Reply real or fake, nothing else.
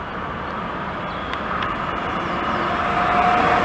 real